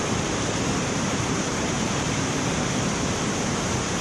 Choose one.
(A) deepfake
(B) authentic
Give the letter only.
A